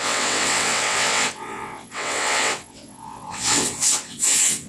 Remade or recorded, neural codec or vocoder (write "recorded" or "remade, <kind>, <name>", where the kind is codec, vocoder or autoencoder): remade, vocoder, WaveNeXt